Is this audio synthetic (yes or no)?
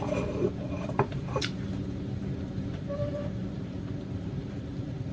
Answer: yes